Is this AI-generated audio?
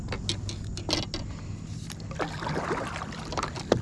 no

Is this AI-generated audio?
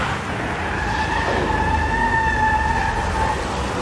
no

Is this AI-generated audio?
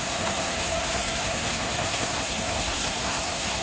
yes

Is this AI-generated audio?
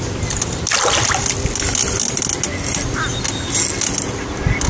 no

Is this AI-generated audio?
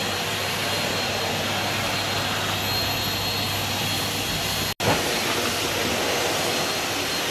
no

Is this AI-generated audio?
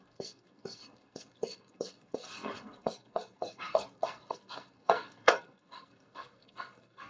yes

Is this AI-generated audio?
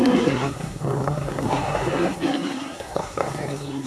yes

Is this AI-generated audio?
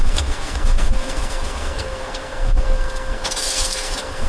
yes